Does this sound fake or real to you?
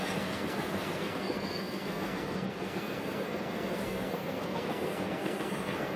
fake